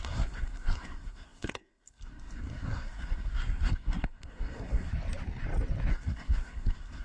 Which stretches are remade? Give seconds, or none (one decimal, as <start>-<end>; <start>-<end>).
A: 0.0-4.9; 5.9-7.0

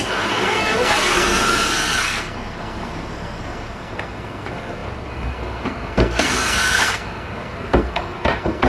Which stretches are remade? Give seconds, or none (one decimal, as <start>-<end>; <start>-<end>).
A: 0.0-8.7

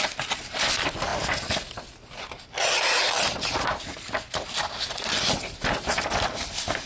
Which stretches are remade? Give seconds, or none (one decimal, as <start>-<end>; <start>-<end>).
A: none

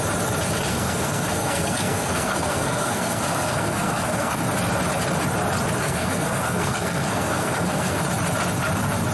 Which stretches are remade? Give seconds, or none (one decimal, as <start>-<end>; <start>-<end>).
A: 0.7-4.4; 5.8-8.0

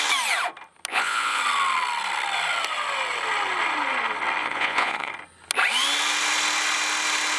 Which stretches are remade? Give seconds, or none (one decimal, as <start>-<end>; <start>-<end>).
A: 0.9-1.4; 4.4-5.1

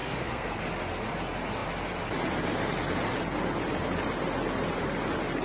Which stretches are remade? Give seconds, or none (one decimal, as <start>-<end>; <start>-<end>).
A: 0.0-0.6

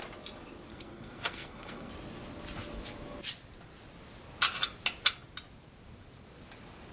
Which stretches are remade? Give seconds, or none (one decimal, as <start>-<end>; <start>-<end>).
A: 0.7-1.9

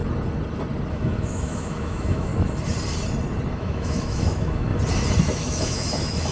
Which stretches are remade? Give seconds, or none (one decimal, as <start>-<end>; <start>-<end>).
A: 0.9-2.3; 3.5-4.7; 5.2-6.3